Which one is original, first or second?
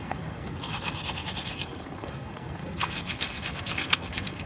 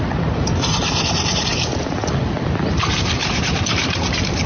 second